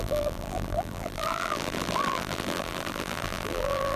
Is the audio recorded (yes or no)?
no